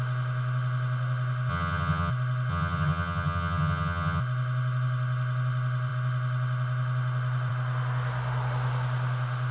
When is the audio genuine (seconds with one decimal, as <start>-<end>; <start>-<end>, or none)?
0.0-1.5; 2.1-2.5; 4.2-9.5

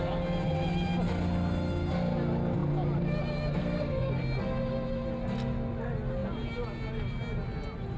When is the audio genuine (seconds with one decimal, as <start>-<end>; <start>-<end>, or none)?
0.0-3.6; 4.1-8.0

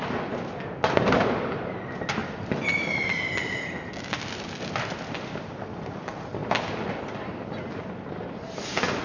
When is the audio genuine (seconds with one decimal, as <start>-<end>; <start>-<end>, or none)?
0.0-9.0

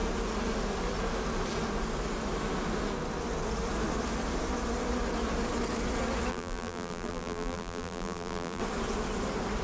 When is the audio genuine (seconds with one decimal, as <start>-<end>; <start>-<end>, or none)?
0.0-6.3; 8.6-9.6

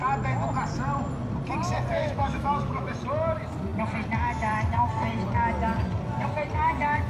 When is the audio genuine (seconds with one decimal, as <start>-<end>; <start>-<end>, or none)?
0.0-1.9; 3.1-7.1

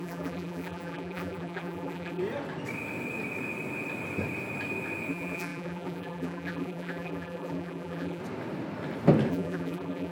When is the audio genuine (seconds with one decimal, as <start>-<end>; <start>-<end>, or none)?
2.2-5.1; 8.2-9.3

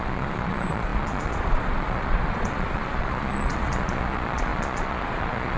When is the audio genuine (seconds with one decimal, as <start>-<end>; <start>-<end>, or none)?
none